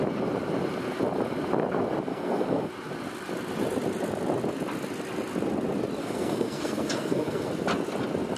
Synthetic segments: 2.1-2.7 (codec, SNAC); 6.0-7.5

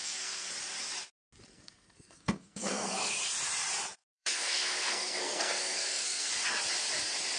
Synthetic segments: 0.0-0.5 (codec, SNAC); 1.5-3.1; 4.0-6.3

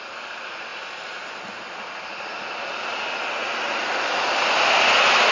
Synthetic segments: none